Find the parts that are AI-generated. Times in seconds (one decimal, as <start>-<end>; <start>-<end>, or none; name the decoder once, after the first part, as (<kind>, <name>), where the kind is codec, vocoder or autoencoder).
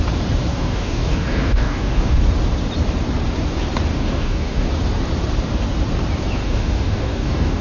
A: 0.5-2.2 (codec, DAC); 3.9-4.7; 6.4-7.6